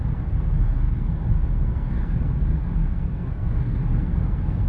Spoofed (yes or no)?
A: yes